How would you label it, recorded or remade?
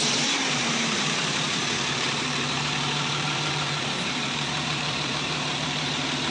remade